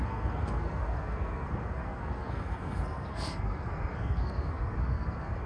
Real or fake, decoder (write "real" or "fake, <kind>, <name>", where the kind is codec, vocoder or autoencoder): fake, codec, SNAC